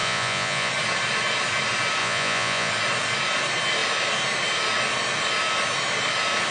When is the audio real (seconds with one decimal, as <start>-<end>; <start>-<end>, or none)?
0.7-2.0; 2.7-6.5